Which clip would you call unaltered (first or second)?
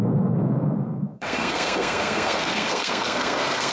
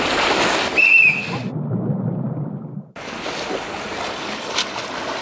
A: second